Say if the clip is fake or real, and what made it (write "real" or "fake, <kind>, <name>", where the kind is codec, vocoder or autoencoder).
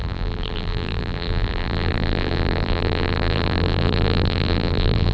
fake, vocoder, BigVGAN v2